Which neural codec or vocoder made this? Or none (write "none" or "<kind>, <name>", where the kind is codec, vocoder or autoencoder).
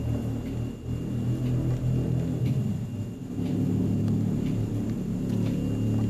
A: none